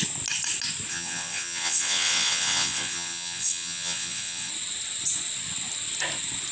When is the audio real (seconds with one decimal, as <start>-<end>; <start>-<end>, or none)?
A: 0.0-0.9; 4.5-6.5